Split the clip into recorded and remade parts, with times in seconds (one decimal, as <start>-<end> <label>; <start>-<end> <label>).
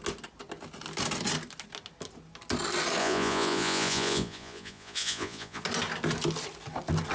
0.0-3.0 recorded; 3.0-5.6 remade; 5.6-7.1 recorded